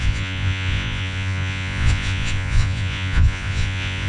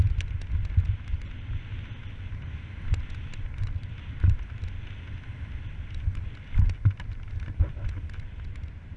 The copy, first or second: first